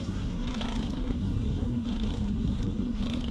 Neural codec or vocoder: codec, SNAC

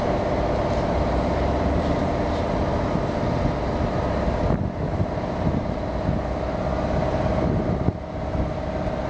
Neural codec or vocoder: none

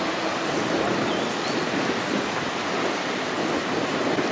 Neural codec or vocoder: none